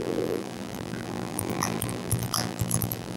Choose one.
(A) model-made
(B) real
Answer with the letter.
A